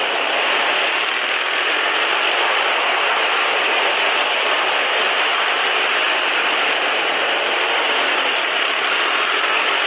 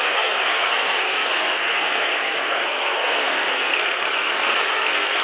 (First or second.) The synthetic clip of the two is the second